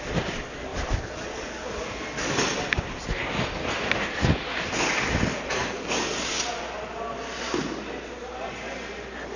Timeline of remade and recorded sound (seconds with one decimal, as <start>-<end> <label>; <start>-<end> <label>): 0.0-9.4 recorded